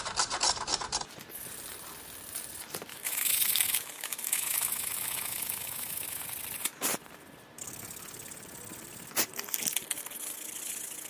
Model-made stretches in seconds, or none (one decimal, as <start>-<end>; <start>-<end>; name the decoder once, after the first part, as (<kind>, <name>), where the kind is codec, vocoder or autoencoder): 2.9-6.2 (autoencoder, DAC-VAE)